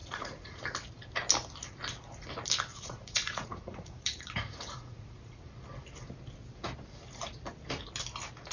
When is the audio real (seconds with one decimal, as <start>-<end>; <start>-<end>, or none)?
0.6-2.7; 5.4-8.5

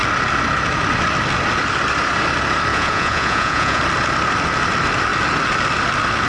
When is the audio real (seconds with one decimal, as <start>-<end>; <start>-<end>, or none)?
0.0-2.7; 3.8-6.3

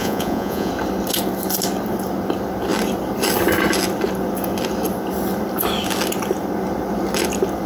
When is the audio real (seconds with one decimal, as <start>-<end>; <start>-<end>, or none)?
0.7-7.7

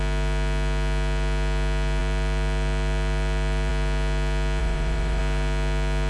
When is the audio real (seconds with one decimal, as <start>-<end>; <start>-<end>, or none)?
0.0-4.6; 5.2-6.1

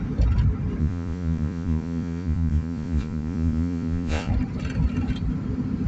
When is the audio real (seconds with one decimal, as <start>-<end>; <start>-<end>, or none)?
0.0-0.8; 4.3-5.9

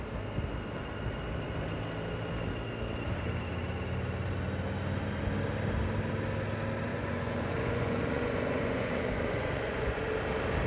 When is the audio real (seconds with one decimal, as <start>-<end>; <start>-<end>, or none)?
0.0-6.9; 10.1-10.7

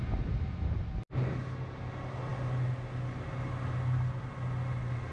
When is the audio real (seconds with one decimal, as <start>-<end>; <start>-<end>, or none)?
0.0-5.1

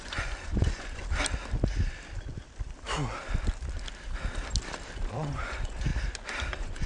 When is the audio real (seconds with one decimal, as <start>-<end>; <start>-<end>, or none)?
1.0-5.1; 5.9-6.5